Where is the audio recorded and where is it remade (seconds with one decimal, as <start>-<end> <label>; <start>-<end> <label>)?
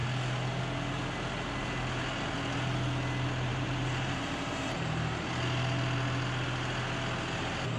0.0-3.5 recorded; 3.5-5.3 remade; 5.3-7.8 recorded